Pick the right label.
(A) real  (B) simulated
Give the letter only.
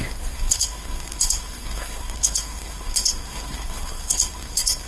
B